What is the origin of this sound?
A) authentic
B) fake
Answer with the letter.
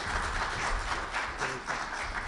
A